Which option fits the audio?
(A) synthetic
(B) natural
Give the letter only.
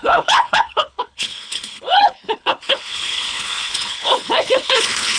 A